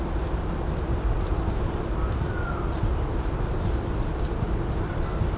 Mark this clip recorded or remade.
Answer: recorded